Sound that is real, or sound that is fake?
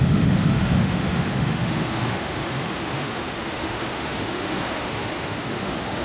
fake